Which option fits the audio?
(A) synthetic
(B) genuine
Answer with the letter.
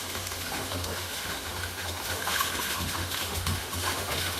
A